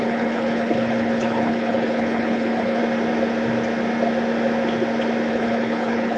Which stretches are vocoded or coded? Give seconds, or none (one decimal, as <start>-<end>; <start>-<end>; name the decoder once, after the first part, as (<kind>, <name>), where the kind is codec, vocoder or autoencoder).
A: 0.0-2.8 (codec, HILCodec); 5.3-6.2